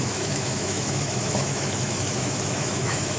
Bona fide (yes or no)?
no